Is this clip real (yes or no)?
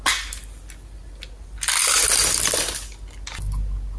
yes